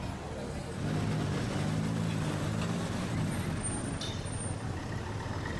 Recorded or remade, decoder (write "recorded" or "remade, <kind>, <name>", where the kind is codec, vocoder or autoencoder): recorded